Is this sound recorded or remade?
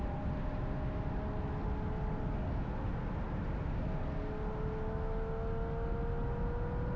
recorded